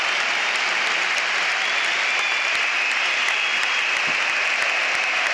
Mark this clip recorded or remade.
recorded